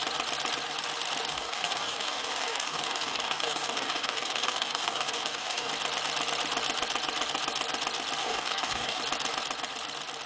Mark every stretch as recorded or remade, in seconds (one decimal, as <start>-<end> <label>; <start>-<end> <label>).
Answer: 0.0-1.3 recorded; 1.3-5.7 remade; 5.7-8.2 recorded; 8.2-9.0 remade; 9.0-10.3 recorded